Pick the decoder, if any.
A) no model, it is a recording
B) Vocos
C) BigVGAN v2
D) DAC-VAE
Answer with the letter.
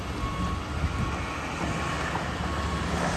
A